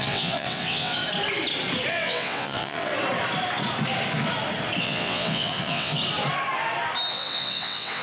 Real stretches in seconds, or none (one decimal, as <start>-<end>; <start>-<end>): 1.0-1.9; 2.9-4.8; 6.0-7.1

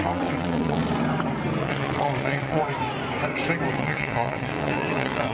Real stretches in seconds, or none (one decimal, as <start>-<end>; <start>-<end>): 0.8-1.6; 2.6-3.7